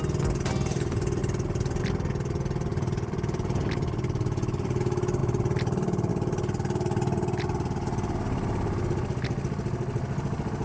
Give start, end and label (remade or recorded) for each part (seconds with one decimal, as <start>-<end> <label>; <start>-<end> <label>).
0.0-2.7 recorded; 2.7-4.8 remade; 4.8-5.2 recorded; 5.2-6.1 remade; 6.1-10.6 recorded